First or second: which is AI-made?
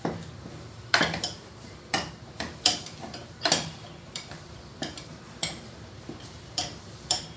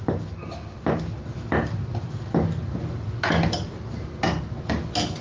first